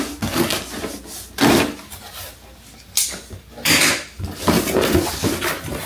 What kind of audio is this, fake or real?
real